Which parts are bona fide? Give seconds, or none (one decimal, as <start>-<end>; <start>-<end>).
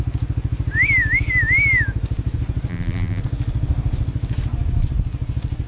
0.0-2.7; 3.2-5.7